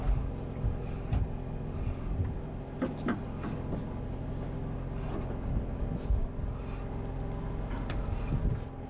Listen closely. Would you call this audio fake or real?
real